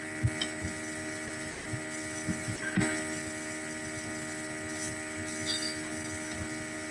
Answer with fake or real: real